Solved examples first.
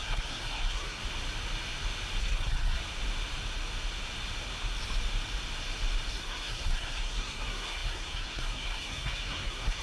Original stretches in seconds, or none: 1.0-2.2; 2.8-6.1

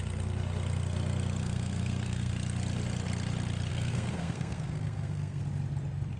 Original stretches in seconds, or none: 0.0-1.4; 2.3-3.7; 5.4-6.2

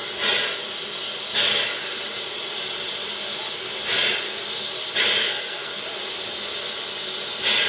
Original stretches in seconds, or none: 0.0-5.2; 5.8-7.7

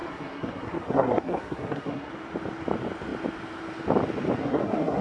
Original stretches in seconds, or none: 2.1-4.4

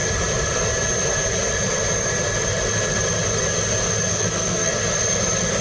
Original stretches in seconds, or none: 0.0-4.1; 4.8-5.6

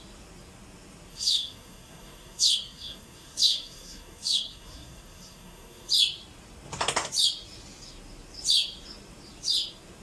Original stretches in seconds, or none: 0.0-1.1; 5.9-10.0

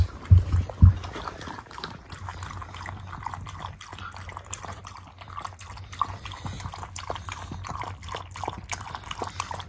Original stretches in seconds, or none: 0.0-9.7

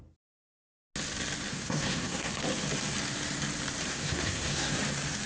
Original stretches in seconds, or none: 0.0-1.5; 2.3-3.9; 4.8-5.3